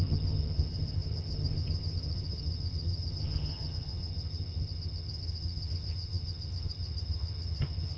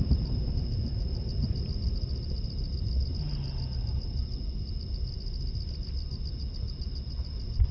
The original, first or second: second